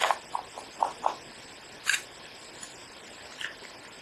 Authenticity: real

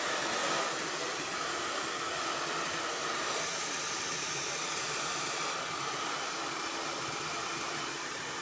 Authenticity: fake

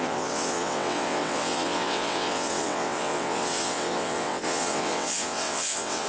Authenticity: fake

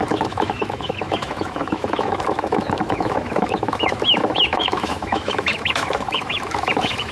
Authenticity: fake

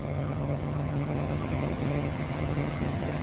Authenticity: fake